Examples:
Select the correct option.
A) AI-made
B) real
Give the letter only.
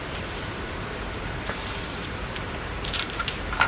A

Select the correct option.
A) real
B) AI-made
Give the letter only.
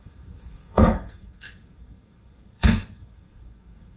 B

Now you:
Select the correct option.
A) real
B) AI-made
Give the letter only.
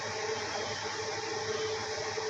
A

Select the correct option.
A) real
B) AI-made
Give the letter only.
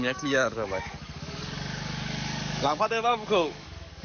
B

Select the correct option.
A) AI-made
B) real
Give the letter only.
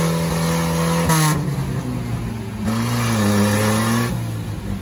B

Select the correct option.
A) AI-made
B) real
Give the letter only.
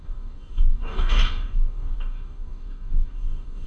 A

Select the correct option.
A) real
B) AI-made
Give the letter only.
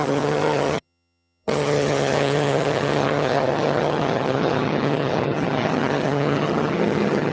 B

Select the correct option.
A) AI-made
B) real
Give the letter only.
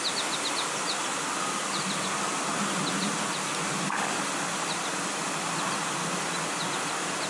B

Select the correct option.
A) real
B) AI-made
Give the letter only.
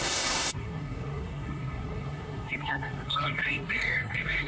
B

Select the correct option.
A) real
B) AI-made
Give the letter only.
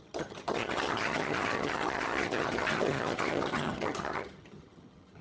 B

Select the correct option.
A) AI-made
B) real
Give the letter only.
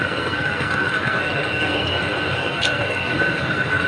A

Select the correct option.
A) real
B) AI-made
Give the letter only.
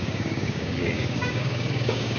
B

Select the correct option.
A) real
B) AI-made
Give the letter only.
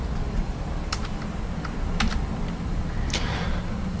A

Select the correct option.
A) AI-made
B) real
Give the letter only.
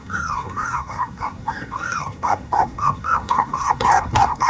A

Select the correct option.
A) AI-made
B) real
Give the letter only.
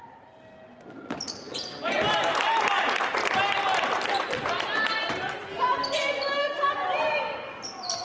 B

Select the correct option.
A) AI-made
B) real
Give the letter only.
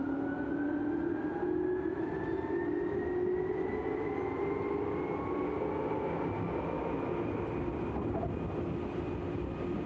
B